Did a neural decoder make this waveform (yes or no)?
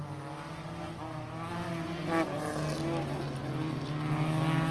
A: no